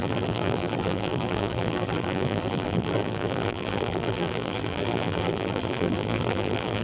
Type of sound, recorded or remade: remade